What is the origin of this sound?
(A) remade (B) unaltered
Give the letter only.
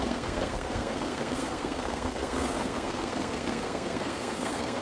A